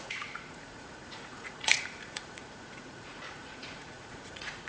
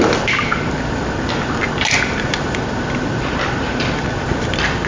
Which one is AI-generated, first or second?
first